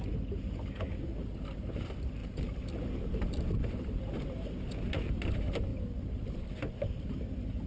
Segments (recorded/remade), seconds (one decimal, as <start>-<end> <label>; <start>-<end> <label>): 0.0-7.7 recorded